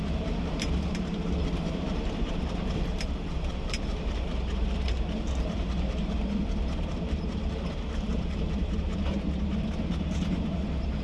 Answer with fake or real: fake